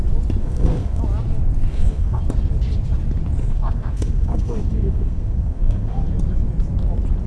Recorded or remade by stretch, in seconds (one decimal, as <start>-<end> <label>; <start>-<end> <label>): 0.0-0.4 recorded; 0.4-1.0 remade; 1.0-1.7 recorded; 1.7-2.2 remade; 2.2-3.4 recorded; 3.4-6.1 remade; 6.1-7.3 recorded